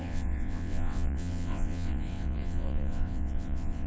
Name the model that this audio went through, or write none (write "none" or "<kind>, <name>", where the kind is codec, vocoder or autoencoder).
vocoder, WaveNeXt